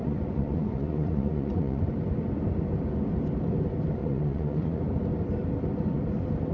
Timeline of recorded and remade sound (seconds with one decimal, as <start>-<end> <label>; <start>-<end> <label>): 0.0-1.8 remade; 1.8-4.0 recorded; 4.0-4.8 remade; 4.8-6.5 recorded